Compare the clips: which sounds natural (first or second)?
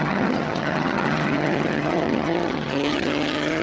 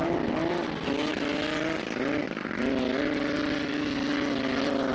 second